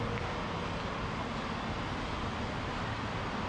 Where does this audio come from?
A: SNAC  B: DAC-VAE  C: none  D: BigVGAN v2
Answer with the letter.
C